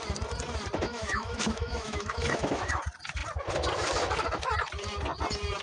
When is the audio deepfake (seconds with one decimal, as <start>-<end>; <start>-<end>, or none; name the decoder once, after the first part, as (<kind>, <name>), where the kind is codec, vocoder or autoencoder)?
0.9-2.6 (autoencoder, DAC-VAE)